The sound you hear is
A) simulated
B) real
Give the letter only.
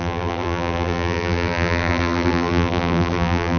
A